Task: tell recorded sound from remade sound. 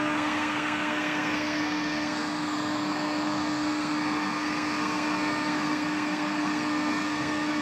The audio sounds remade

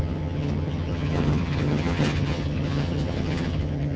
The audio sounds remade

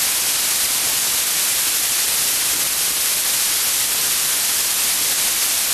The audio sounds recorded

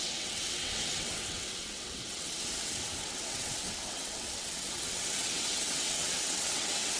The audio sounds remade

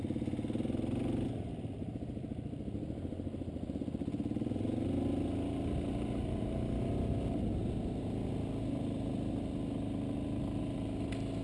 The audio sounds recorded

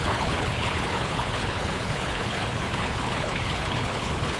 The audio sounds remade